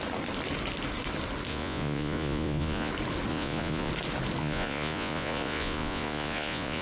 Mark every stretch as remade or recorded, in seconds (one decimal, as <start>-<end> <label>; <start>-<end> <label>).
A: 0.0-1.5 recorded; 1.5-2.9 remade; 2.9-3.3 recorded; 3.3-3.9 remade; 3.9-4.4 recorded; 4.4-6.8 remade